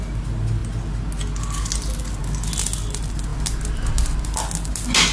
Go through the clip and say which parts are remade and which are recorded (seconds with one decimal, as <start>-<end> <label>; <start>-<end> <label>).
0.0-5.1 recorded